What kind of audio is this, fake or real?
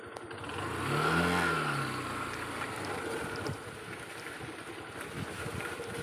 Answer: real